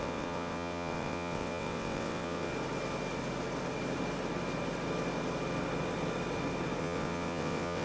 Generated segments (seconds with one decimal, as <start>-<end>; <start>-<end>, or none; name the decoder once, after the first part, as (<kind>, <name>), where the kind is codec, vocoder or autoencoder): 0.0-2.5 (vocoder, WaveNeXt); 6.8-7.8